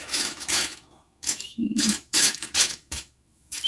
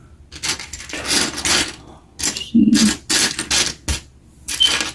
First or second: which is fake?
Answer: first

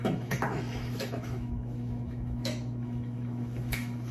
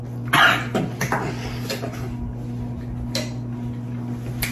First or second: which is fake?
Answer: first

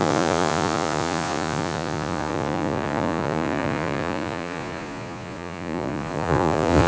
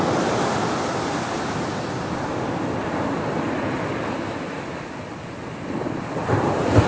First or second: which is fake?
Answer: first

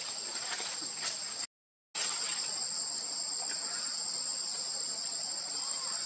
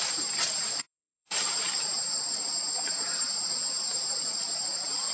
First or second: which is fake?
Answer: second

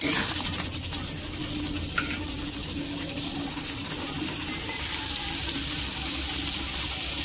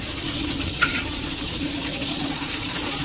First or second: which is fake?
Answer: second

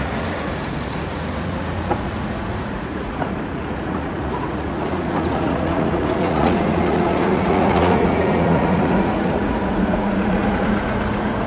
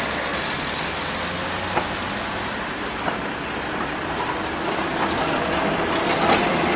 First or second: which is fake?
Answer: first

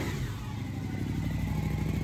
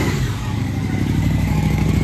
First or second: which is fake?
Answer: second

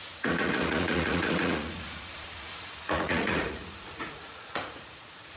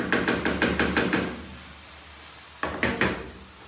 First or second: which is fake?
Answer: first